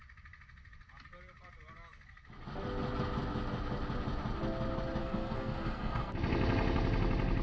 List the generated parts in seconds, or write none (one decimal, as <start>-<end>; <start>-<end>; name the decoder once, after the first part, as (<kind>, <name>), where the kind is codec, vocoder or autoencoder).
5.0-6.1 (codec, SNAC)